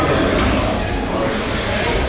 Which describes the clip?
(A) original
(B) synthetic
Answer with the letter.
A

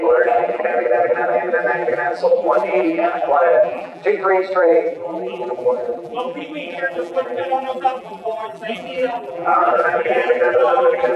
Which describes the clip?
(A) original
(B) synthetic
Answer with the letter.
B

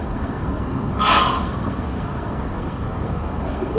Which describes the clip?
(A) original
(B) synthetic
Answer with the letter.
B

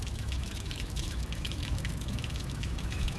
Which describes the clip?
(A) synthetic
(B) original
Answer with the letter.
A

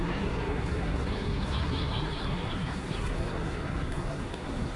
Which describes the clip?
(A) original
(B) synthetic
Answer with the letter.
B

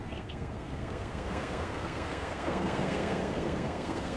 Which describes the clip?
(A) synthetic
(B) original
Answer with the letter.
A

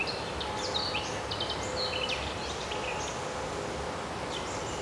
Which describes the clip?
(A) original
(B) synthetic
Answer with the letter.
A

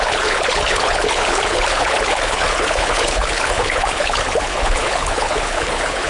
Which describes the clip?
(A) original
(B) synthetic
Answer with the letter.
B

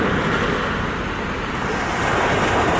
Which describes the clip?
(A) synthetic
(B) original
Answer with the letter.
B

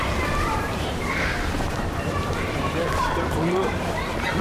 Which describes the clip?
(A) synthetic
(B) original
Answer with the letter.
A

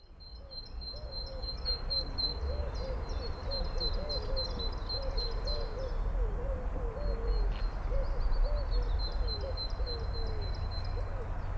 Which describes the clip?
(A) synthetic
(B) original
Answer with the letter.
B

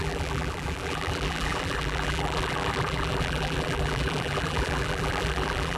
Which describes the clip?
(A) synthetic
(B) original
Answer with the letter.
A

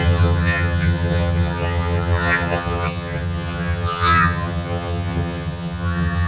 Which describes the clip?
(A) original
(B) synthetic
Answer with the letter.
B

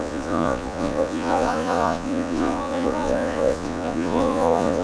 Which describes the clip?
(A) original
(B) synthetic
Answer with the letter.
B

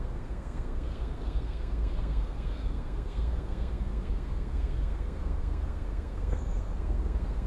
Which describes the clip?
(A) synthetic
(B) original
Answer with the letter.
A